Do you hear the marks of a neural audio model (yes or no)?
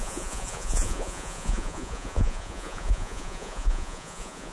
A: yes